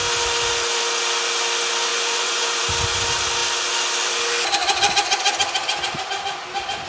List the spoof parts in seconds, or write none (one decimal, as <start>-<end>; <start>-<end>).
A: 1.9-2.6

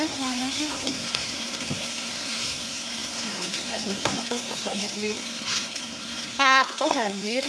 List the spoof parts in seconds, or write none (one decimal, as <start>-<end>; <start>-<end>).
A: 0.0-7.5

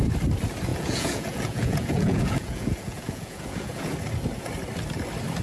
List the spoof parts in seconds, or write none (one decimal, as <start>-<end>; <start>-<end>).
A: 0.7-3.9

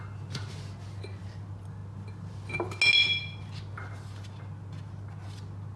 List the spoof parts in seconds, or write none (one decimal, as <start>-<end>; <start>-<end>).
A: none

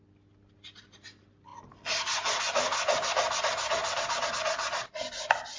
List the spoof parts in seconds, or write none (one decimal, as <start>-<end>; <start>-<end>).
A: 3.8-4.3

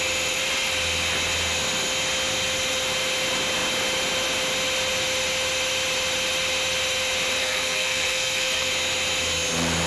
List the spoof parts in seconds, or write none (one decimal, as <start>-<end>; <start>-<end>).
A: 7.4-8.7

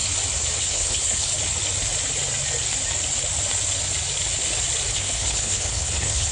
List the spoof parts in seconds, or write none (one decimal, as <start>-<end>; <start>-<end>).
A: 0.6-1.3; 4.9-6.3